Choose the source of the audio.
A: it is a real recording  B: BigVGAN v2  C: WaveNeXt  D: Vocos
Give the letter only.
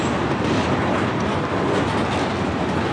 A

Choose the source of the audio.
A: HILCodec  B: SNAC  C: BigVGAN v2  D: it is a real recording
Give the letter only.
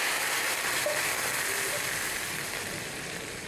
C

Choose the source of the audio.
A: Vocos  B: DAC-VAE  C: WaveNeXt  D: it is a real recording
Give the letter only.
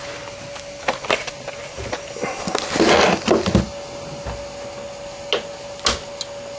D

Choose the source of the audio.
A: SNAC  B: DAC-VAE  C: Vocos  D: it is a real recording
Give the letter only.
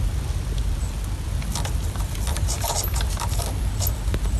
D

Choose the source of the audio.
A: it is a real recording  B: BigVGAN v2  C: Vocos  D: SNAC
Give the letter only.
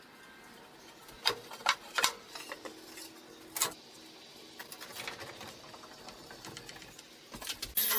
A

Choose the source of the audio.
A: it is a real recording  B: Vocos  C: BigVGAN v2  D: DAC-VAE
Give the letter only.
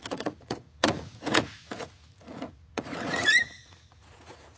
B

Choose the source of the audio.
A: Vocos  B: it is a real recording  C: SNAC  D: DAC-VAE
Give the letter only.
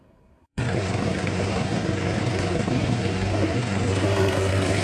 C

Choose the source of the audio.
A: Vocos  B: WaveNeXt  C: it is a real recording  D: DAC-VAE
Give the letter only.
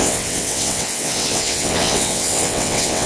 B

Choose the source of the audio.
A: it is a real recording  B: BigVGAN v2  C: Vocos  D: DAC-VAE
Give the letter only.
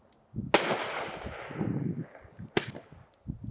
A